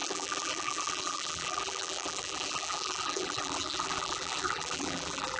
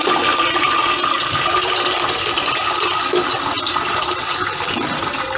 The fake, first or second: first